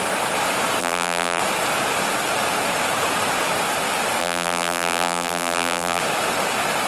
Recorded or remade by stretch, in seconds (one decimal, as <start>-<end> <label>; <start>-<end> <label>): 0.0-0.8 recorded; 0.8-1.4 remade; 1.4-4.2 recorded; 4.2-6.0 remade; 6.0-6.9 recorded